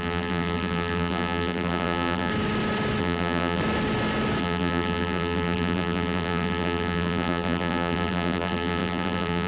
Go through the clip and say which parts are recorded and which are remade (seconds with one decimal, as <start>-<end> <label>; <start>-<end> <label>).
0.0-2.3 remade; 2.3-3.0 recorded; 3.0-3.6 remade; 3.6-4.4 recorded; 4.4-9.5 remade